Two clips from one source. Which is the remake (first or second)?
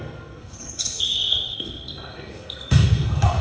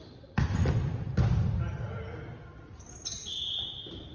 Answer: first